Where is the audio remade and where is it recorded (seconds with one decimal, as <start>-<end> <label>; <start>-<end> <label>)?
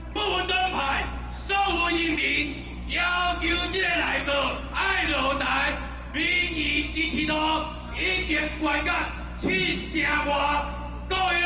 0.0-0.6 recorded; 0.6-4.6 remade; 4.6-7.8 recorded; 7.8-8.8 remade; 8.8-11.5 recorded